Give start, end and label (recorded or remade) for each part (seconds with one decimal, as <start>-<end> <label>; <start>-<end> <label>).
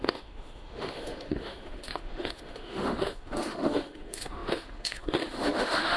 0.0-6.0 remade